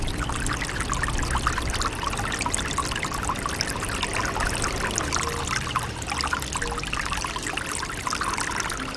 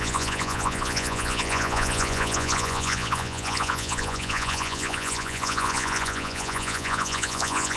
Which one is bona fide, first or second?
first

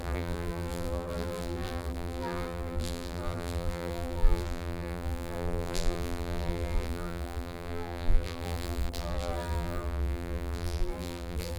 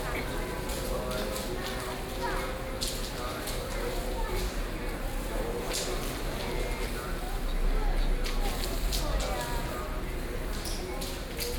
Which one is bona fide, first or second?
second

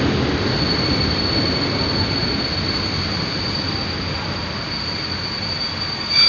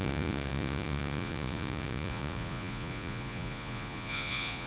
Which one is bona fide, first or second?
first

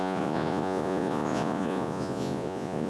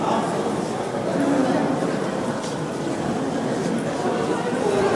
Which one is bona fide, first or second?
second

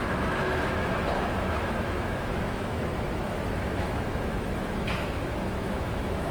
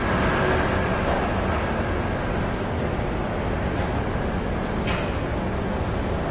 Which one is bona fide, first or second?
second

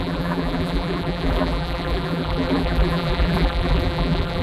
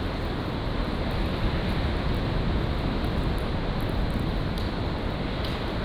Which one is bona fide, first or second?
second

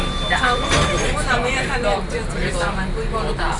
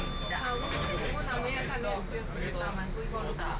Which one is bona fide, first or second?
second